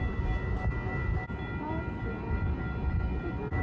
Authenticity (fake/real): real